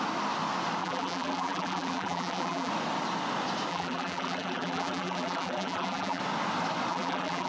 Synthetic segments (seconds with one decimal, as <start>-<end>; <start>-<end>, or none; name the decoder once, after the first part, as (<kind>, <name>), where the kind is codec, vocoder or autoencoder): 0.8-2.7 (vocoder, BigVGAN v2); 3.7-6.2; 6.9-7.5